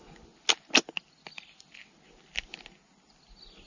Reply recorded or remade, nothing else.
recorded